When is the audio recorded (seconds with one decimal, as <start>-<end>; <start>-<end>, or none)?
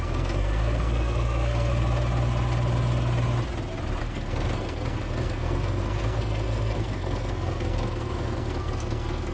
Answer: 1.7-4.0